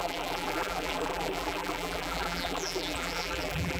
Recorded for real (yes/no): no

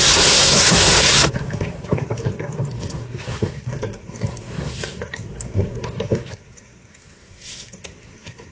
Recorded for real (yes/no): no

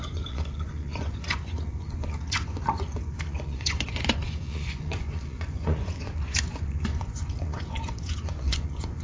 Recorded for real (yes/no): no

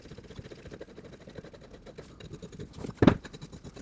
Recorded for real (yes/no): yes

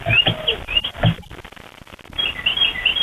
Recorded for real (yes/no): yes